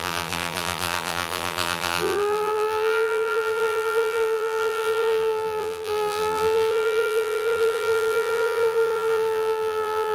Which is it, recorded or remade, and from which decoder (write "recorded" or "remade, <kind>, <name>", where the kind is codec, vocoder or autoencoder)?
remade, vocoder, BigVGAN v2